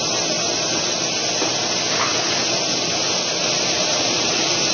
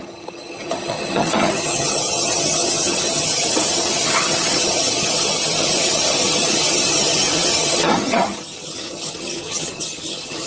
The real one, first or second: first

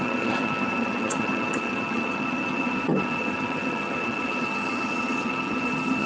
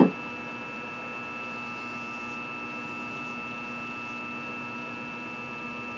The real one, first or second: second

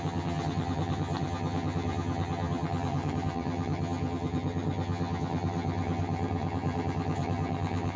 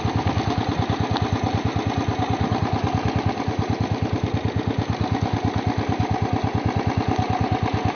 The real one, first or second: second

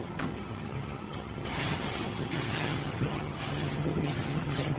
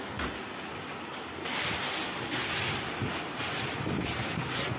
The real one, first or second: second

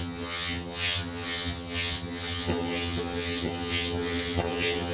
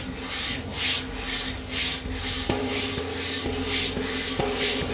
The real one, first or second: second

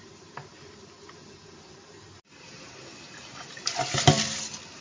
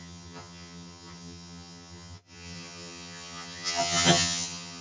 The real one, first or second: first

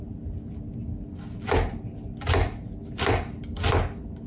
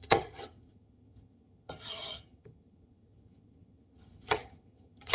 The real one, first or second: first